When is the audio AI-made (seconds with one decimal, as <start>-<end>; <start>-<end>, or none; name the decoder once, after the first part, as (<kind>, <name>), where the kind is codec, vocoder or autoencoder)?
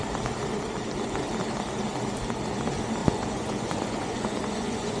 3.0-5.0 (vocoder, Vocos)